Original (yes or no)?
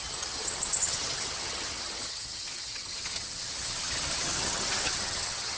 no